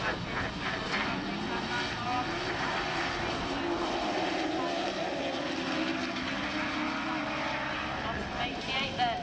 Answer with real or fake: real